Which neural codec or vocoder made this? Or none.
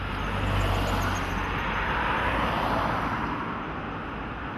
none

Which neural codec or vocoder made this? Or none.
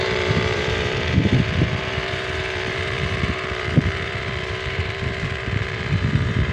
vocoder, BigVGAN v2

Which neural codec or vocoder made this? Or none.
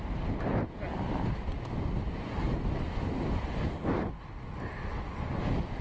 none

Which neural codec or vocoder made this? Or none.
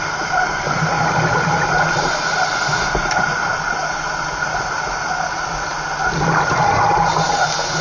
none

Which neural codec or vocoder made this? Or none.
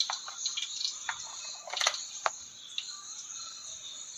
none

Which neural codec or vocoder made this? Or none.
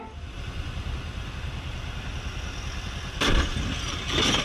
none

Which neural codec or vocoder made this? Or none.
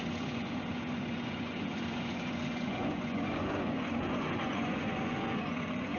vocoder, Vocos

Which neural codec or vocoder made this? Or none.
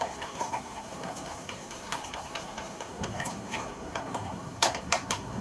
codec, SNAC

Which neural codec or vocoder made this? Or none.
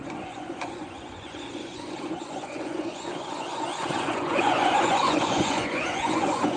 vocoder, Vocos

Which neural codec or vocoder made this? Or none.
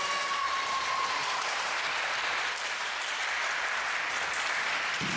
none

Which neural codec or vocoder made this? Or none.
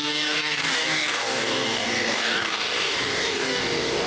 codec, DAC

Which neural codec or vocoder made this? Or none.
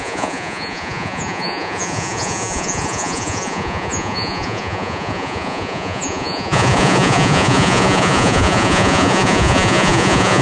vocoder, Vocos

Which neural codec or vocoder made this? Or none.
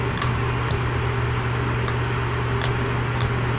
none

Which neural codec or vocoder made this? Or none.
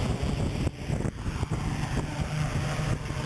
none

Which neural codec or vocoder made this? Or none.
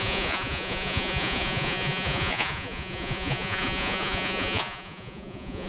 vocoder, Vocos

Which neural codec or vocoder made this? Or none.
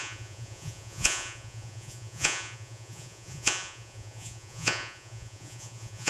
vocoder, Vocos